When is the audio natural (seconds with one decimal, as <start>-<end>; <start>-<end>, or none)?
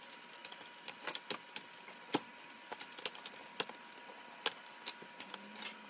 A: 0.0-5.9